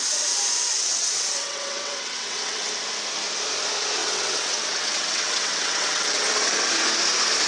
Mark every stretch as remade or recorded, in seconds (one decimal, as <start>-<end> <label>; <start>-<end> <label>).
0.0-0.7 recorded; 0.7-2.7 remade; 2.7-4.0 recorded; 4.0-6.0 remade; 6.0-7.5 recorded